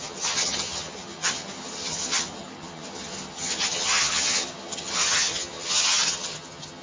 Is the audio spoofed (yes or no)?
yes